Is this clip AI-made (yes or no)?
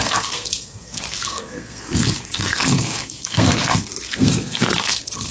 yes